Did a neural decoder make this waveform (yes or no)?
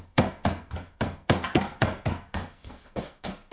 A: yes